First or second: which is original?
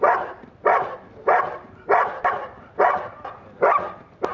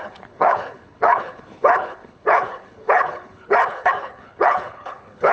first